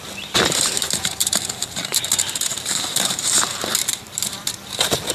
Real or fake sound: fake